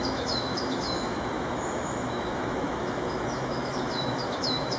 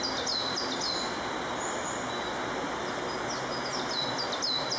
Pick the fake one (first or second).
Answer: first